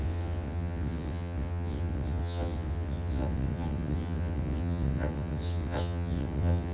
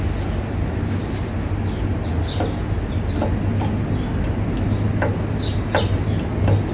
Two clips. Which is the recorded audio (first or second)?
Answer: second